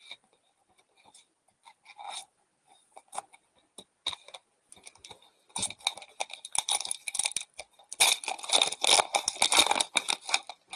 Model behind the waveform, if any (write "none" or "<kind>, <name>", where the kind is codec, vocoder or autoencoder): none